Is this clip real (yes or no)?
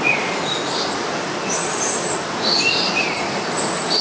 yes